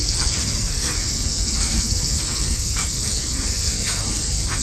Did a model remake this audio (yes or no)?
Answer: yes